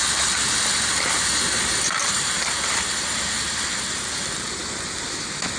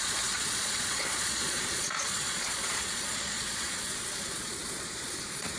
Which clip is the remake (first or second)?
second